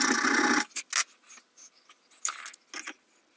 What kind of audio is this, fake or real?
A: real